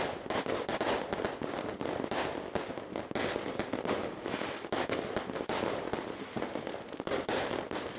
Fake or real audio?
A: real